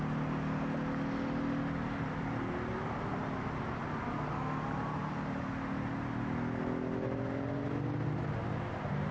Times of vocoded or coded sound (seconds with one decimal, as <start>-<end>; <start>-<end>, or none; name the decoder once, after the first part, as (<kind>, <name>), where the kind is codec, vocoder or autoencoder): none